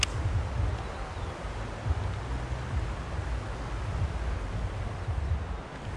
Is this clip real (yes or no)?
yes